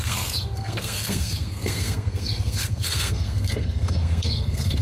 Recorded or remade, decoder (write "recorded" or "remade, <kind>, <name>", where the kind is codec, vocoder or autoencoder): remade, codec, SNAC